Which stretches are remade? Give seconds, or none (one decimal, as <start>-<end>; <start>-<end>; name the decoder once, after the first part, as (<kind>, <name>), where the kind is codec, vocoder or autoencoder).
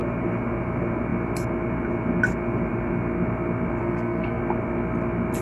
3.8-4.4 (codec, SNAC)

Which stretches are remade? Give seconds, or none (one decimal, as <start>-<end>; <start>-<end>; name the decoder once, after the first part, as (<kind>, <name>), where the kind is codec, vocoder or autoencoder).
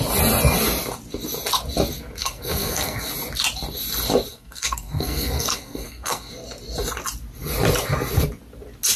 2.2-3.1 (codec, SNAC); 4.3-6.3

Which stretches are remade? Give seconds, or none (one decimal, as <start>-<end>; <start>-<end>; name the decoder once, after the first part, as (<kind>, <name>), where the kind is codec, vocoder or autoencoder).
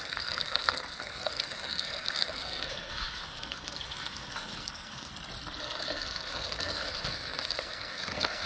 0.0-5.1 (codec, SNAC); 5.6-8.5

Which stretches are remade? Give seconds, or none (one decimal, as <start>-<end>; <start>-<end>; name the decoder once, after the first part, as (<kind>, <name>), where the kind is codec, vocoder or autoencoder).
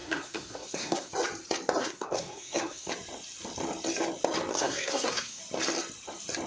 0.0-1.1 (codec, SNAC); 1.8-2.9; 4.5-5.4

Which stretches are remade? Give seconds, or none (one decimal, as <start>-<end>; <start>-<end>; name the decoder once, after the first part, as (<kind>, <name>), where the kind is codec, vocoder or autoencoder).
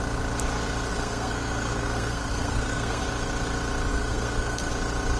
0.9-3.0 (codec, SNAC); 3.9-4.7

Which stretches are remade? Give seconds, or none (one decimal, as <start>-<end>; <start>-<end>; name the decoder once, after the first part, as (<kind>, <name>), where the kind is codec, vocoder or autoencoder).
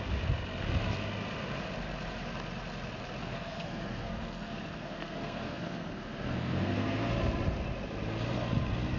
3.2-7.1 (codec, SNAC)